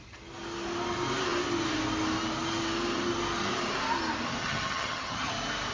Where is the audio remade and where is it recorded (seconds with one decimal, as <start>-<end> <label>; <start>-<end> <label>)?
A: 0.0-4.4 recorded; 4.4-5.3 remade; 5.3-5.7 recorded